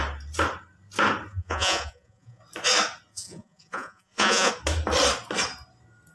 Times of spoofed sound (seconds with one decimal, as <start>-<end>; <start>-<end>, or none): 1.3-2.4; 3.1-4.5